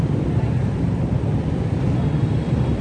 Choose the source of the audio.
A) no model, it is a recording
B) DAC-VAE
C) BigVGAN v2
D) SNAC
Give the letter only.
C